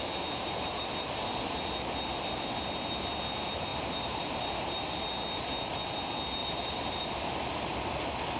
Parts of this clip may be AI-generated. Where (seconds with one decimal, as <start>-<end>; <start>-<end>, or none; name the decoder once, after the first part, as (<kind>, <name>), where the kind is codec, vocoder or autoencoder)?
3.7-4.4 (vocoder, BigVGAN v2); 6.4-7.1